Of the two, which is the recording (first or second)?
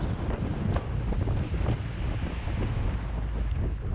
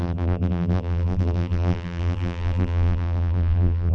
first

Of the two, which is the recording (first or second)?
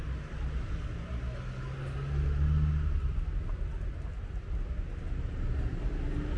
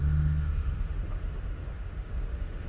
first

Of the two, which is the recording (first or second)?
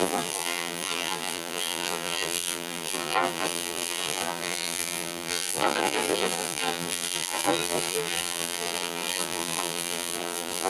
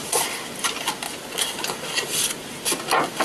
second